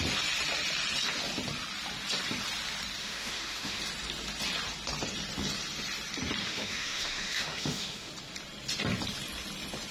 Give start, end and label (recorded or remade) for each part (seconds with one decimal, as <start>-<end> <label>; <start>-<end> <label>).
0.0-3.0 recorded; 3.0-3.8 remade; 3.8-6.4 recorded; 6.4-8.1 remade; 8.1-9.9 recorded